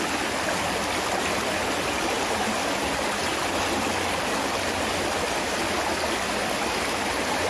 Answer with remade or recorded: recorded